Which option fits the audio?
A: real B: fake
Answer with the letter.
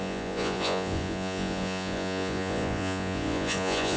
B